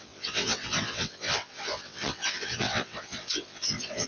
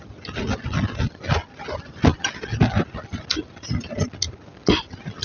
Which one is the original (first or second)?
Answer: second